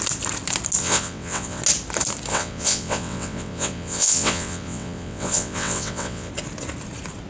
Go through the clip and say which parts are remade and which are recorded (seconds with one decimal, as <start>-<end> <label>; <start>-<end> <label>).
0.0-0.8 recorded; 0.8-1.6 remade; 1.6-2.3 recorded; 2.3-6.3 remade; 6.3-7.3 recorded